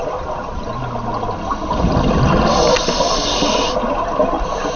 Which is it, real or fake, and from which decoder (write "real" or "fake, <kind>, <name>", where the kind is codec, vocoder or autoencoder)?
real